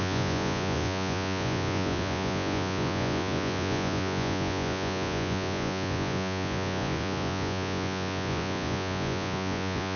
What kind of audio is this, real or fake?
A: fake